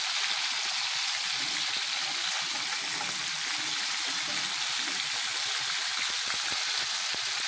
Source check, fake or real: real